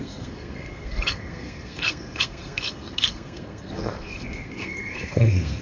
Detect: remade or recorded remade